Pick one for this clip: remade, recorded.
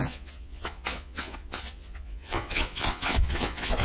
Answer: remade